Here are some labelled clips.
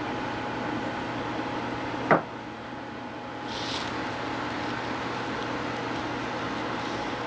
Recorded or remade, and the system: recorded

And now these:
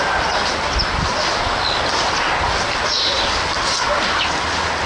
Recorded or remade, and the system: recorded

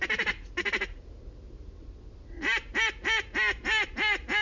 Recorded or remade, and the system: recorded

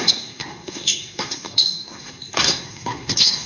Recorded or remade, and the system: remade, codec, SNAC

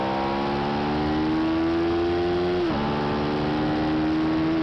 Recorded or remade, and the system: recorded